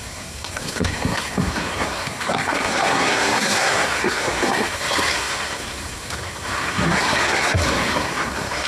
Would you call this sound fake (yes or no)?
yes